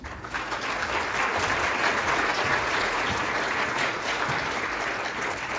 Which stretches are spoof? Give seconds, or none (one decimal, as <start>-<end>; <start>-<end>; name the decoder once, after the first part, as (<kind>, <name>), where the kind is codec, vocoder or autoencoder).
2.0-4.2 (vocoder, Vocos)